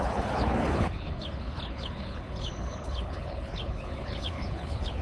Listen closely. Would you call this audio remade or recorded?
remade